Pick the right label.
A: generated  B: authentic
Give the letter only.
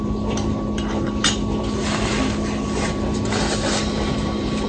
B